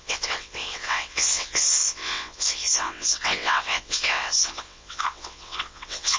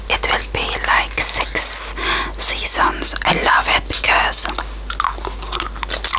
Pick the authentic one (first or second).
second